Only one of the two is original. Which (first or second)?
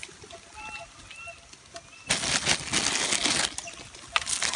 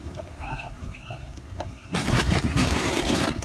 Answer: first